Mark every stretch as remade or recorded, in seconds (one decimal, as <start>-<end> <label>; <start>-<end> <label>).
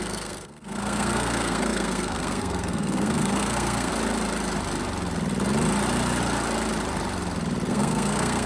0.0-3.9 remade; 3.9-7.7 recorded; 7.7-8.5 remade